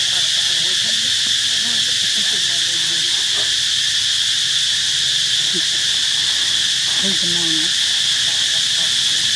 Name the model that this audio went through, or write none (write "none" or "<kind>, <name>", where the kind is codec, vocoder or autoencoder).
none